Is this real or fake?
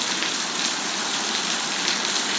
fake